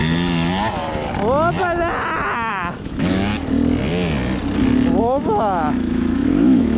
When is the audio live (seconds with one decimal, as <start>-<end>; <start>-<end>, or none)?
0.0-2.5; 3.3-5.0